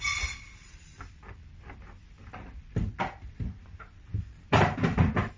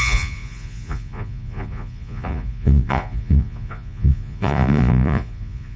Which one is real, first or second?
first